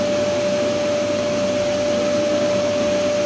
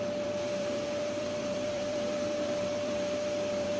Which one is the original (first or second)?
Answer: first